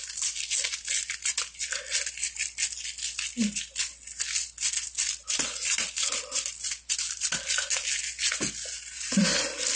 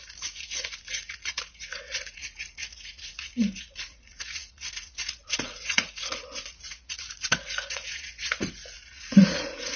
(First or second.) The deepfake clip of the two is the second